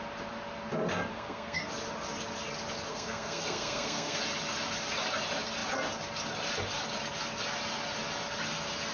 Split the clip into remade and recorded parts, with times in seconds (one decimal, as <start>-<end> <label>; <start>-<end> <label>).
0.0-1.1 recorded; 1.1-1.7 remade; 1.7-2.9 recorded; 2.9-4.2 remade; 4.2-8.9 recorded

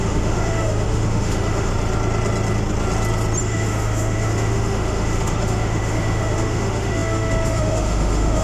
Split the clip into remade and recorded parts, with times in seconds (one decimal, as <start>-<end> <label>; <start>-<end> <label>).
0.0-1.7 remade; 1.7-3.4 recorded; 3.4-8.4 remade

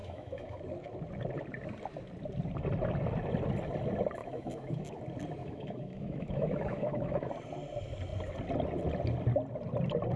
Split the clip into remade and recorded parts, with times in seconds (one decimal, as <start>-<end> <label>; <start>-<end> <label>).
0.0-0.6 remade; 0.6-4.2 recorded; 4.2-5.0 remade; 5.0-5.4 recorded; 5.4-7.3 remade; 7.3-10.2 recorded

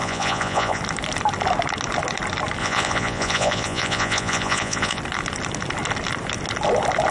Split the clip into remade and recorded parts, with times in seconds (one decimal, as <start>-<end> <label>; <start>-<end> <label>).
0.0-0.8 remade; 0.8-2.6 recorded; 2.6-5.0 remade; 5.0-7.1 recorded

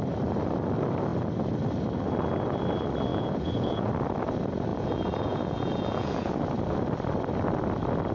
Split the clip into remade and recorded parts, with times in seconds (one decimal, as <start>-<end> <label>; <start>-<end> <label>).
0.0-3.1 recorded; 3.1-3.9 remade; 3.9-4.7 recorded; 4.7-6.3 remade; 6.3-8.1 recorded

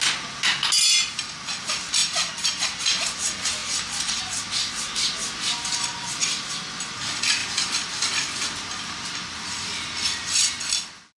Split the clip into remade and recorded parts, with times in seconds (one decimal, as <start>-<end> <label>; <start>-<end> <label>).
0.0-2.0 recorded; 2.0-2.8 remade; 2.8-3.6 recorded; 3.6-4.2 remade; 4.2-7.4 recorded; 7.4-11.2 remade

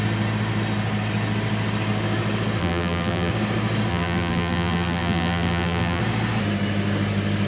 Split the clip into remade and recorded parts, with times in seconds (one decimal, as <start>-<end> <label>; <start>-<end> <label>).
0.0-2.6 recorded; 2.6-3.3 remade; 3.3-3.9 recorded; 3.9-6.0 remade; 6.0-7.5 recorded

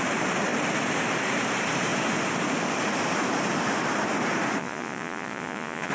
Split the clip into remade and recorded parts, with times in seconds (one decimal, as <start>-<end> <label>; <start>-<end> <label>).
0.0-4.6 recorded; 4.6-5.9 remade